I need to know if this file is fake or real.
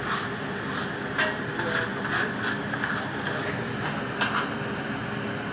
real